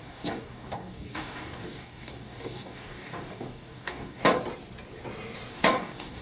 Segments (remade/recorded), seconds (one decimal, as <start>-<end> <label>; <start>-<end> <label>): 0.0-4.2 remade; 4.2-5.5 recorded; 5.5-6.2 remade